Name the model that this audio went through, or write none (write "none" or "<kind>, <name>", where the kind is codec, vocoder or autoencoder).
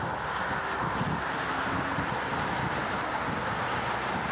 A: none